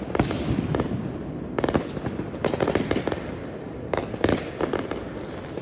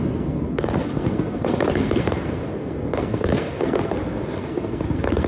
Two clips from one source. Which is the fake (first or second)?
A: second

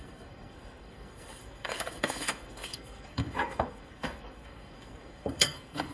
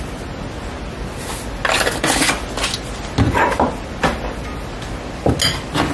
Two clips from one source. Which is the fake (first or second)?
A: first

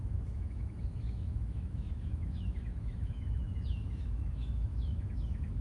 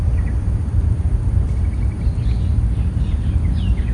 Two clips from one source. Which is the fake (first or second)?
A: first